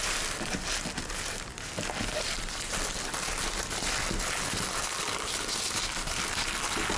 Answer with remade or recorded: recorded